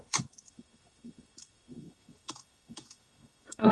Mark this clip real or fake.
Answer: fake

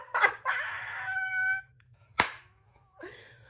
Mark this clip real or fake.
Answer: fake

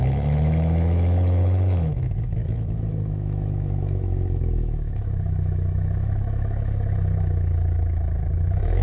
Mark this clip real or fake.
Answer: fake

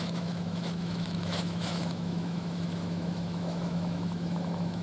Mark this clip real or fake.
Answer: fake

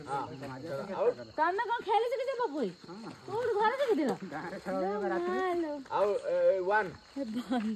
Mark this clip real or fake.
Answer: real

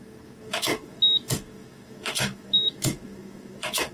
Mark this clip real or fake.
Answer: fake